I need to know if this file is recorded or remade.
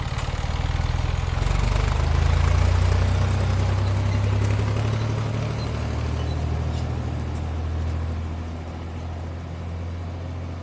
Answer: recorded